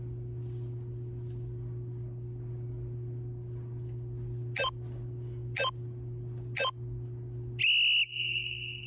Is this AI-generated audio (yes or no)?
no